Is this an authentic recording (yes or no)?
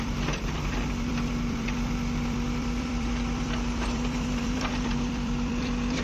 no